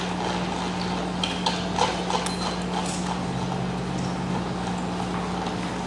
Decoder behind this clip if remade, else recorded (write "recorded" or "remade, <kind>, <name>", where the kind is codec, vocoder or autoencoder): recorded